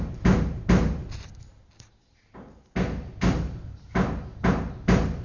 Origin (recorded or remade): recorded